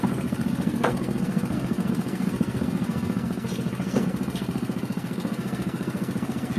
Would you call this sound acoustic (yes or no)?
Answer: no